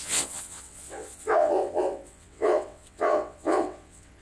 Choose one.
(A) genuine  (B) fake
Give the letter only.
B